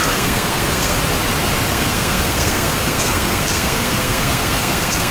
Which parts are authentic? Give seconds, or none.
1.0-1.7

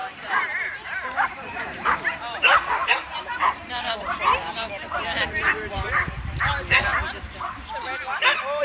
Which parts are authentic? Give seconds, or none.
6.5-7.1; 7.7-8.6